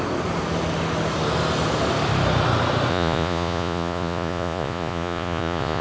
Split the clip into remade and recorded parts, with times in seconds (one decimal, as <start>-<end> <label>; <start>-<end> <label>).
0.0-2.9 recorded; 2.9-5.8 remade